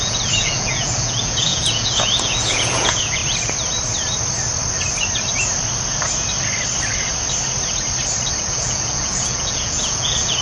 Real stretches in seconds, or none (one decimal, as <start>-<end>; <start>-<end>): 3.2-8.4